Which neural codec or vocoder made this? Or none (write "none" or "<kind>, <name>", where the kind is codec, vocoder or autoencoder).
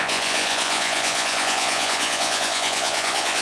vocoder, Vocos